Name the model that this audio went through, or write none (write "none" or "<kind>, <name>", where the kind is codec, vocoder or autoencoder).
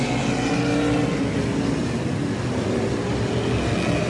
none